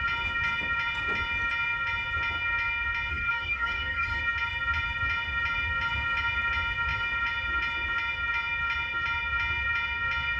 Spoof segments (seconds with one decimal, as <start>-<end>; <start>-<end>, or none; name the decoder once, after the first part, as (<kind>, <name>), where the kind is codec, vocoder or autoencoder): 3.1-4.2 (codec, DAC)